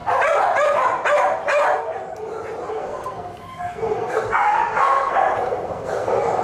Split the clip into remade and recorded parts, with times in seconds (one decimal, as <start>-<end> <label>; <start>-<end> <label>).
0.0-2.7 recorded; 2.7-6.4 remade